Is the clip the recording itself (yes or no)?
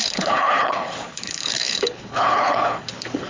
no